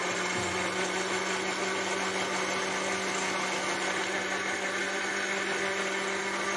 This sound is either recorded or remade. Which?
recorded